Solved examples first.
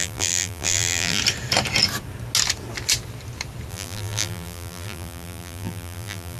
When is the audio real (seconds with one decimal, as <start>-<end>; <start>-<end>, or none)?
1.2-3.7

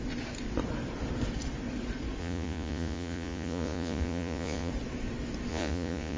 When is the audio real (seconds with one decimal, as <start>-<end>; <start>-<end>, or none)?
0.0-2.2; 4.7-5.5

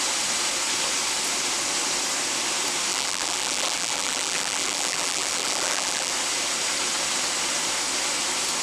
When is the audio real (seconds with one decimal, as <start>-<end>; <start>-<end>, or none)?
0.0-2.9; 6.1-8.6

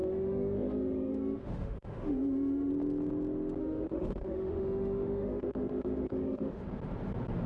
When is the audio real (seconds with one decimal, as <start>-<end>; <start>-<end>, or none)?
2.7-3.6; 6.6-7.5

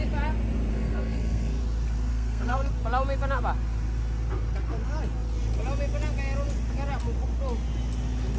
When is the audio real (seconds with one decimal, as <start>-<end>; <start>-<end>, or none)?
0.0-0.7; 1.6-2.1; 2.7-8.4

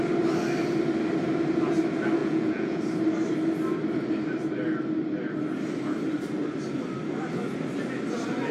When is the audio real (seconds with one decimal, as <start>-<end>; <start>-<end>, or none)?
0.0-2.2; 2.8-8.5

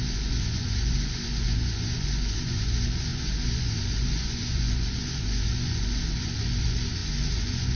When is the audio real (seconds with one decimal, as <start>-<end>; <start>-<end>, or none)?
none